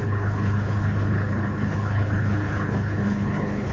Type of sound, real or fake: fake